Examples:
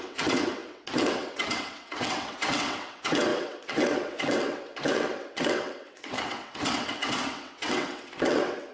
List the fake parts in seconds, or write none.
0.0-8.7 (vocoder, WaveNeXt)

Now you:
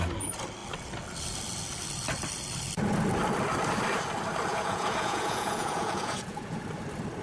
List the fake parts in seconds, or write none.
4.5-6.6 (vocoder, Vocos)

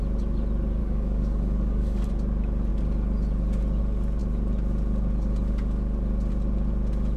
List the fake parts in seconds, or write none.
0.8-2.1 (codec, DAC)

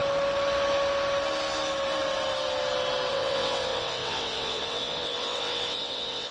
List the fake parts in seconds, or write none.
3.1-6.3 (vocoder, WaveNeXt)

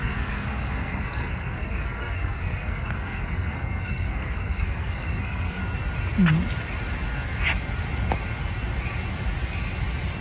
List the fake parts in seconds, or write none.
0.0-5.6 (codec, SNAC)